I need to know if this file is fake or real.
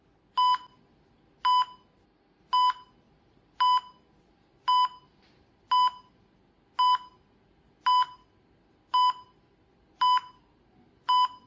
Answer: real